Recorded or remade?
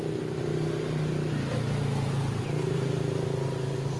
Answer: recorded